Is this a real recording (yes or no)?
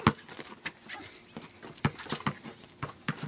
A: yes